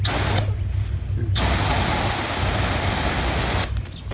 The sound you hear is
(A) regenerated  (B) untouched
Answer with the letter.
B